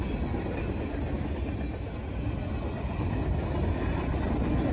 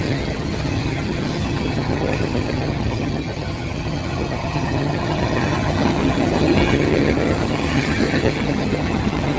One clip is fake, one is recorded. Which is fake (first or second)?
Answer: second